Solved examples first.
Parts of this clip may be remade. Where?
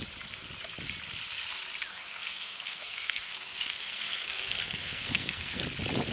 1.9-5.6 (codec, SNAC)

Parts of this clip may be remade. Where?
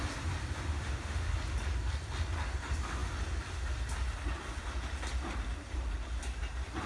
0.7-1.3 (autoencoder, DAC-VAE)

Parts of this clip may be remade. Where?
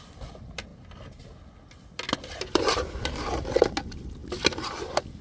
4.2-5.2 (vocoder, BigVGAN v2)